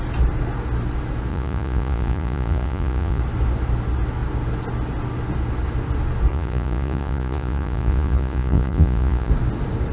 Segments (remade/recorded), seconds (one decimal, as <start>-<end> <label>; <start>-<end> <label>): 0.0-1.3 recorded; 1.3-3.2 remade; 3.2-6.3 recorded; 6.3-9.3 remade; 9.3-9.9 recorded